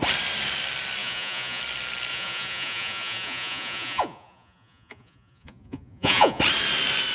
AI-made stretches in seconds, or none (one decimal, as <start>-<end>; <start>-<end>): 1.0-1.6; 2.1-6.4